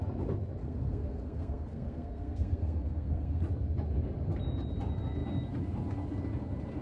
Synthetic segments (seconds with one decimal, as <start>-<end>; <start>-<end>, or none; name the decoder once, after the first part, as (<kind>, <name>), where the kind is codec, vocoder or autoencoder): 0.6-3.4 (codec, SNAC)